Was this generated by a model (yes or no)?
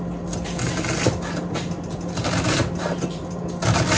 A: no